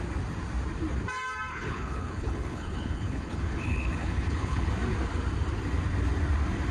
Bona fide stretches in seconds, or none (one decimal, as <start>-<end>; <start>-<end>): 0.0-1.5; 4.7-6.7